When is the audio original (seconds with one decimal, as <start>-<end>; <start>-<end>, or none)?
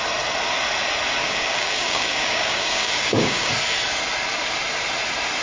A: 0.0-1.2; 3.5-5.4